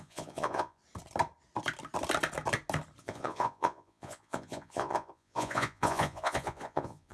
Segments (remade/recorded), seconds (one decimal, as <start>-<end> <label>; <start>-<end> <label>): 0.0-0.8 remade; 0.8-3.0 recorded; 3.0-7.1 remade